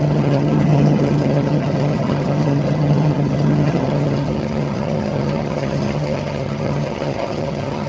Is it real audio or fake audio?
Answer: fake